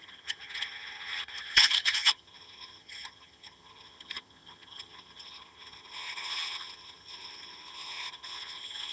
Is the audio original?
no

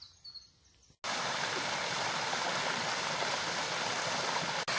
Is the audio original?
yes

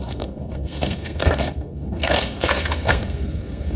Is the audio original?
no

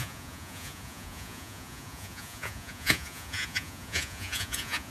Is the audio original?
no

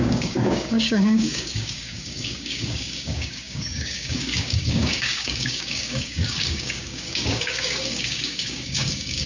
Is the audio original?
no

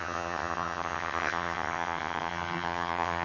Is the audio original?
no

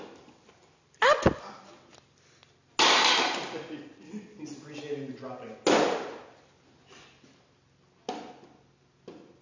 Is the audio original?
yes